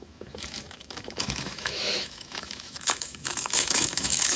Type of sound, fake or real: fake